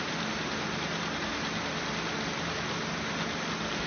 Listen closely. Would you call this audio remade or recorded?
recorded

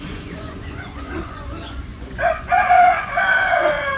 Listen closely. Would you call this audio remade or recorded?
remade